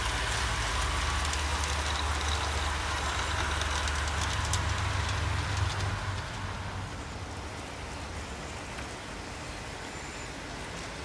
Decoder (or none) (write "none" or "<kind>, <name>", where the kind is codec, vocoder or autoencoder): none